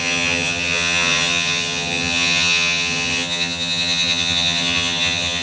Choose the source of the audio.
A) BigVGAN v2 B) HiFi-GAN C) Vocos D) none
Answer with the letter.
B